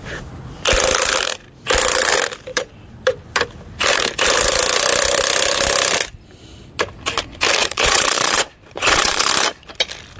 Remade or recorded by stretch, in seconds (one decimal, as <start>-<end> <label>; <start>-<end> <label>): 0.0-2.5 recorded; 2.5-3.0 remade; 3.0-7.6 recorded; 7.6-9.3 remade; 9.3-10.2 recorded